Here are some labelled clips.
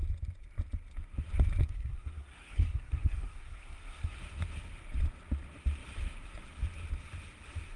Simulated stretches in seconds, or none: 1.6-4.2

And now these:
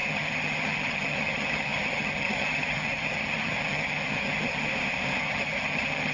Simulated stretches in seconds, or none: 0.0-4.7; 5.2-6.1

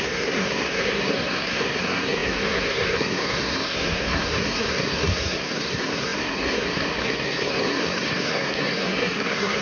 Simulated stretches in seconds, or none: 0.0-9.6

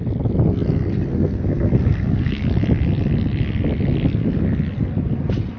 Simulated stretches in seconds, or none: 1.1-2.4

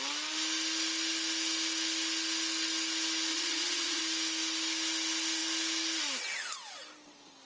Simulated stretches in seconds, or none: 3.3-4.0